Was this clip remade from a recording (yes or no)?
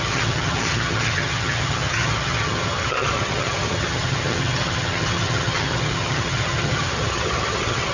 yes